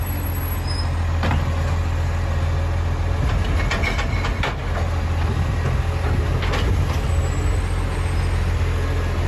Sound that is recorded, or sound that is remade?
recorded